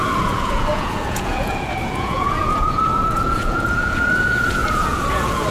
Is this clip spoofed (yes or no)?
yes